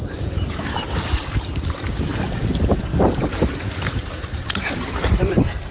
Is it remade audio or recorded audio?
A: remade